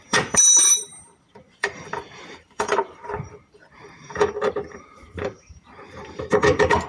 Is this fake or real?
fake